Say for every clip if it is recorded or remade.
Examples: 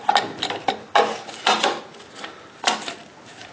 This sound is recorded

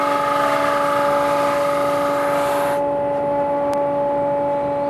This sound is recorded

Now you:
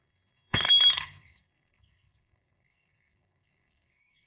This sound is remade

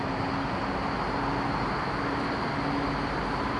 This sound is recorded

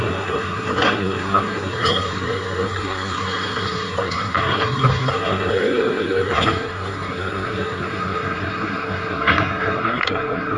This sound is remade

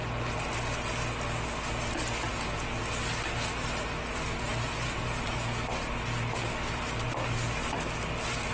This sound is recorded